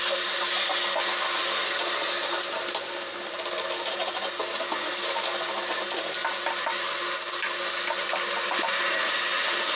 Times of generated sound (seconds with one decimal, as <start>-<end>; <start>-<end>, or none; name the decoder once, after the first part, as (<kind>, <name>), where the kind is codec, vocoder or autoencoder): none